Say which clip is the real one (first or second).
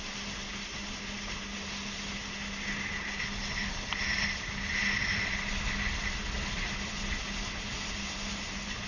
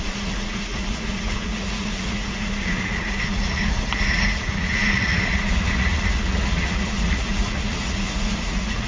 first